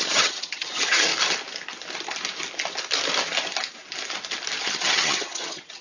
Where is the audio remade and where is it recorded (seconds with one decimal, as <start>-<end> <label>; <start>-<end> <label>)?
0.0-1.1 remade; 1.1-4.6 recorded; 4.6-5.8 remade